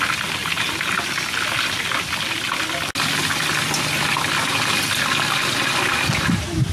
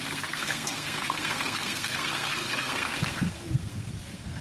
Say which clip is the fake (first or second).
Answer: second